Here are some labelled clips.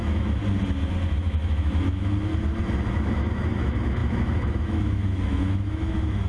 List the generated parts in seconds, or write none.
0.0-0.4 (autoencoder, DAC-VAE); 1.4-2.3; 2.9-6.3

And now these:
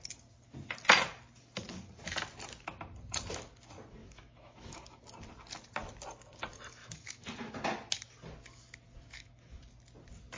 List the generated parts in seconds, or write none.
4.0-5.0 (autoencoder, DAC-VAE); 6.8-7.5; 9.1-9.6

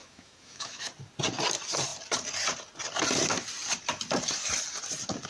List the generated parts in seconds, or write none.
0.0-0.9 (autoencoder, DAC-VAE)